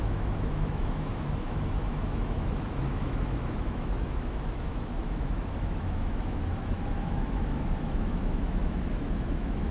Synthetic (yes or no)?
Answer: yes